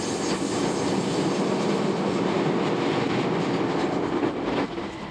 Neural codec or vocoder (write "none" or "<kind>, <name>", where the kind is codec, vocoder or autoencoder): none